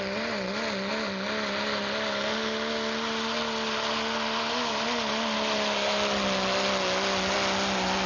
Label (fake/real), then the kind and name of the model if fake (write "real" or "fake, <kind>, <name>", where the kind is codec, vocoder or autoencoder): real